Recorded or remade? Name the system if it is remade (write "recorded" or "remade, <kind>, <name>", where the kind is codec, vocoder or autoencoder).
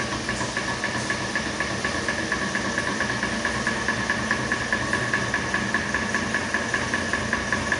recorded